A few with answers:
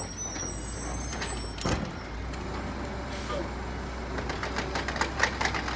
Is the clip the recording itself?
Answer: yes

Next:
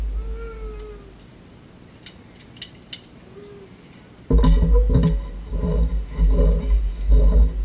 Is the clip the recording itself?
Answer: yes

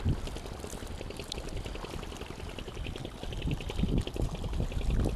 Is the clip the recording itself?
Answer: yes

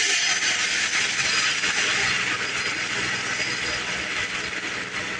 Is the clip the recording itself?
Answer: yes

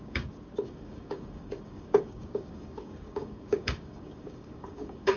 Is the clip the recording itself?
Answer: no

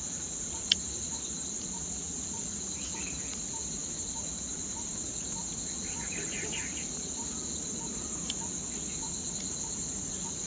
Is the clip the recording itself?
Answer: no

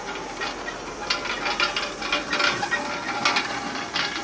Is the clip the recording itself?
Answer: yes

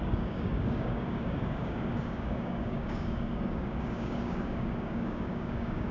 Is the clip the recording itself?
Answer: no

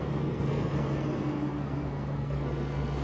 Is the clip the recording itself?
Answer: no